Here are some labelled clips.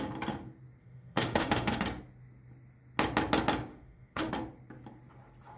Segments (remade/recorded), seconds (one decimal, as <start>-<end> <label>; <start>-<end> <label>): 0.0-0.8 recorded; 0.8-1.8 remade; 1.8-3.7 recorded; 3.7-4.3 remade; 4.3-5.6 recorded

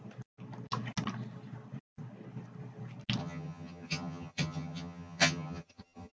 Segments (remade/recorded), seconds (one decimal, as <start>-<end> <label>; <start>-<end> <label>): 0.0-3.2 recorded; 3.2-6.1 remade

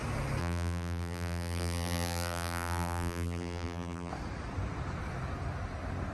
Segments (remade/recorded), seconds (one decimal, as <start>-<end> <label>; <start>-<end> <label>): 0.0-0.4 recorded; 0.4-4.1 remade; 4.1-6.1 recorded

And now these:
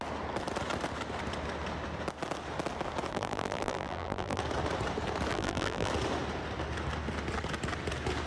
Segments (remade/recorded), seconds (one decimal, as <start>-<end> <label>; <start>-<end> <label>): 0.0-3.1 recorded; 3.1-4.4 remade; 4.4-5.3 recorded; 5.3-5.9 remade; 5.9-8.3 recorded